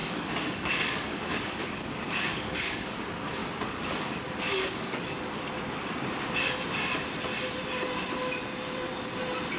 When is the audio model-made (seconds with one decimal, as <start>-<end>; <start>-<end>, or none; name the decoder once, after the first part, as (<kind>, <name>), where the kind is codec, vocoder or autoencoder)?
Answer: 0.0-3.0 (codec, DAC); 3.4-5.0